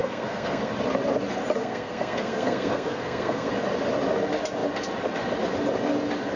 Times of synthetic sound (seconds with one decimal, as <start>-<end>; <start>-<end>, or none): 0.0-0.7; 1.6-3.5